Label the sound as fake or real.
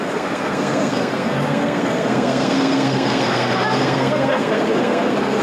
fake